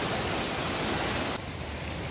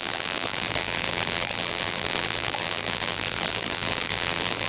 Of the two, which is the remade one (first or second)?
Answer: second